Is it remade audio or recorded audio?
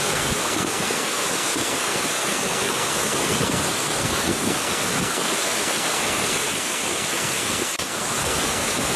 remade